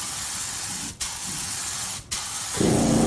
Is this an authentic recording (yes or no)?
no